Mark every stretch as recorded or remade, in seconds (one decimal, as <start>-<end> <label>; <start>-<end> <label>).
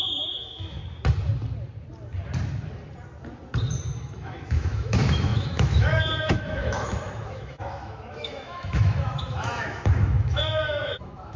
0.0-0.8 remade; 0.8-4.0 recorded; 4.0-11.4 remade